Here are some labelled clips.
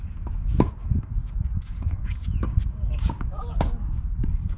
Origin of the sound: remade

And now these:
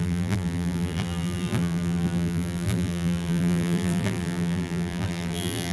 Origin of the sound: remade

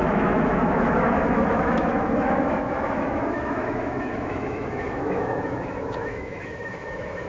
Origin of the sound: remade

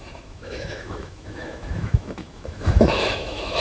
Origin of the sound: remade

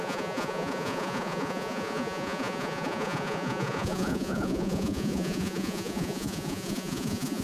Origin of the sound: remade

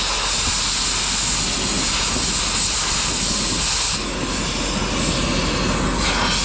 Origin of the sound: recorded